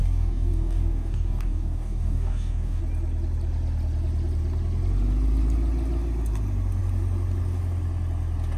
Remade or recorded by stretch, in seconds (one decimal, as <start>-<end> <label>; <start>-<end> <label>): 0.0-2.8 remade; 2.8-8.6 recorded